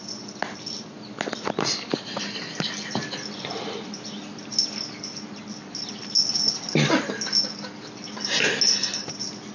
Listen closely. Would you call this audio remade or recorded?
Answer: recorded